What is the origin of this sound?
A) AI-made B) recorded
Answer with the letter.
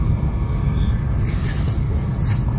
B